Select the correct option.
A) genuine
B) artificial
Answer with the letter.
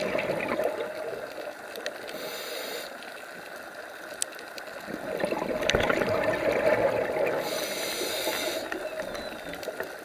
A